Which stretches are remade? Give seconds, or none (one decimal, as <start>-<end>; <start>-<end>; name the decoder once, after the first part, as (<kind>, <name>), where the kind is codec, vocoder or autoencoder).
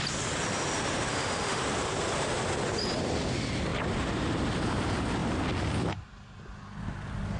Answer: 1.1-1.6 (autoencoder, DAC-VAE)